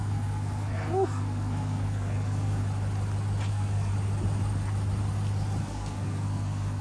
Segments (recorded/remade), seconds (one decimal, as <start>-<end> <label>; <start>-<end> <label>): 0.0-2.6 remade; 2.6-3.5 recorded; 3.5-3.9 remade; 3.9-5.6 recorded; 5.6-6.8 remade